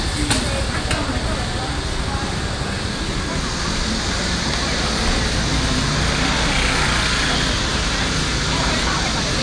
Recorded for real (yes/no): yes